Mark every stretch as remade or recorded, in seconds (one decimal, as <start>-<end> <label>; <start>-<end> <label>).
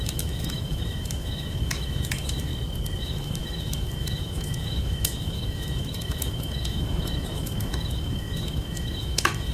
0.0-2.5 remade; 2.5-3.0 recorded; 3.0-9.5 remade